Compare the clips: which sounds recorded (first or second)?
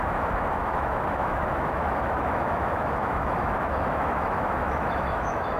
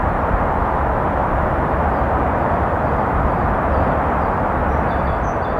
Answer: second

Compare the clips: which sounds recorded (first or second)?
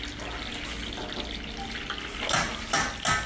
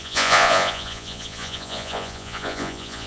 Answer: first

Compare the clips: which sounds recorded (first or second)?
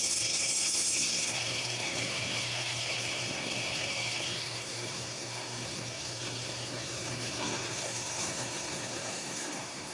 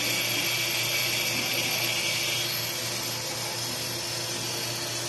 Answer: second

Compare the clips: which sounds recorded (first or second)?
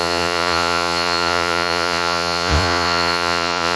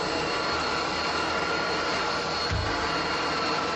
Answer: second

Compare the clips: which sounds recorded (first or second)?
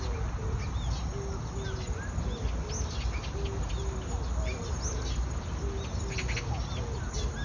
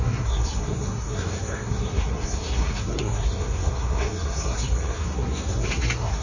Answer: first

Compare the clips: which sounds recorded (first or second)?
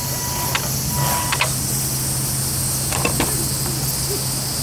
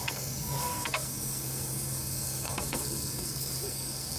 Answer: first